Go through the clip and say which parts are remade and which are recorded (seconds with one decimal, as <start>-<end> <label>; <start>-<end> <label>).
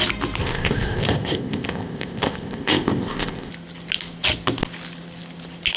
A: 0.0-0.4 recorded; 0.4-3.5 remade; 3.5-5.8 recorded